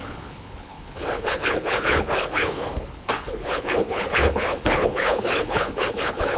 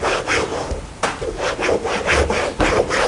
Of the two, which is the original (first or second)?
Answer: second